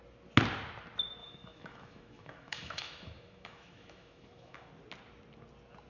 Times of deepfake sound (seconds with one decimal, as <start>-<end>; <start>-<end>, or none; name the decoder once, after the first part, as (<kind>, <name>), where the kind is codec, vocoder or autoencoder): 1.2-4.7 (autoencoder, DAC-VAE)